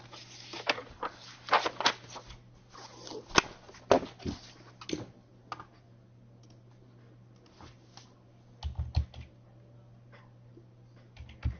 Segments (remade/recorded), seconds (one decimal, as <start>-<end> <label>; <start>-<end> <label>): 0.0-0.8 recorded; 0.8-1.5 remade; 1.5-11.6 recorded